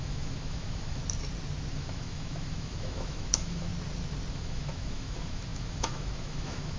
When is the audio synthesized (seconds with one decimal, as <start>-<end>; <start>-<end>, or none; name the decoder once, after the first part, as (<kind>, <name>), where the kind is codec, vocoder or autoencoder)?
0.0-1.0 (autoencoder, DAC-VAE); 1.7-3.7; 4.3-6.8